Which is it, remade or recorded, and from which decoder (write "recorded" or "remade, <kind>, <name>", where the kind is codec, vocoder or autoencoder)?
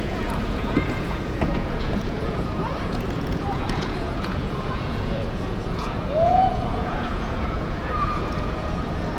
remade, vocoder, Vocos